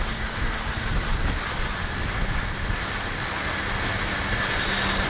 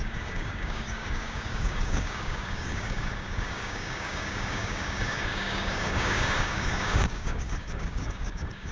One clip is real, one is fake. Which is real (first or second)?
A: first